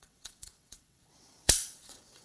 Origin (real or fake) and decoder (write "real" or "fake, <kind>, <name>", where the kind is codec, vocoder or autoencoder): fake, vocoder, WaveNeXt